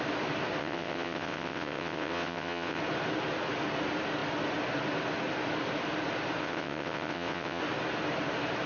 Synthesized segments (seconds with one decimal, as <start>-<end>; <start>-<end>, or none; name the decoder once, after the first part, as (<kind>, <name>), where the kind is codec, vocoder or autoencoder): 0.6-2.8 (vocoder, WaveNeXt); 6.4-7.6